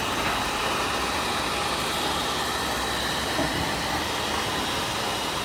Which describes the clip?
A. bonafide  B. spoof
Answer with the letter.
A